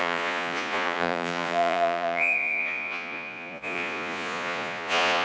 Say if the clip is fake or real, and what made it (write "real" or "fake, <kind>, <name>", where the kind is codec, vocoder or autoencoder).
fake, vocoder, Vocos